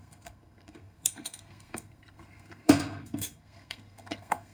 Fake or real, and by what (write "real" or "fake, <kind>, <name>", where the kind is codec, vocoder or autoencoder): fake, codec, SNAC